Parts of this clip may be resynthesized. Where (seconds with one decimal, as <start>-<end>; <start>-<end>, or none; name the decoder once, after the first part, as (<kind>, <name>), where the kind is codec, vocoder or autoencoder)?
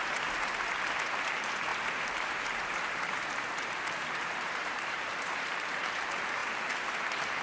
1.7-5.9 (vocoder, BigVGAN v2)